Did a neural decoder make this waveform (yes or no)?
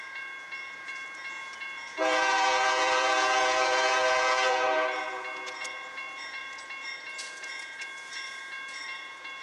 yes